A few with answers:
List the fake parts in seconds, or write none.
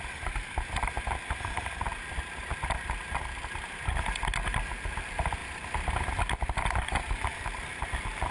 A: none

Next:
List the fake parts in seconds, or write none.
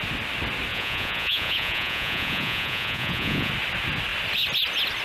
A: 0.7-3.5 (vocoder, Vocos)